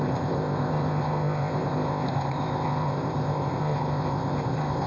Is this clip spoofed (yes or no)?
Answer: yes